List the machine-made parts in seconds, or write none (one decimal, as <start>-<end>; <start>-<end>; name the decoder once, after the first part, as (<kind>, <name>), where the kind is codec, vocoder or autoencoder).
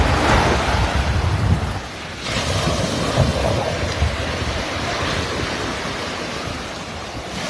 3.3-6.9 (vocoder, BigVGAN v2)